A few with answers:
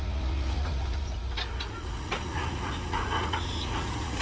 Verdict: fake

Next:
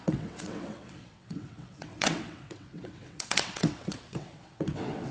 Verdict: fake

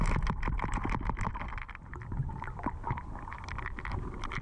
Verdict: real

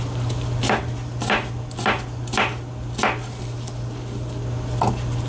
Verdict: real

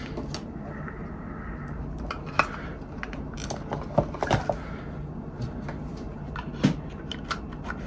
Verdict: real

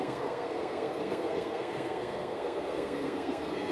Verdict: fake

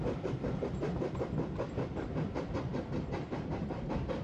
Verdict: fake